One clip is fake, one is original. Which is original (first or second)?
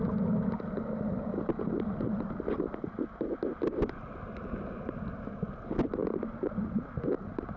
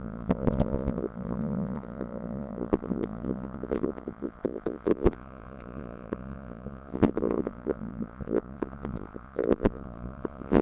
first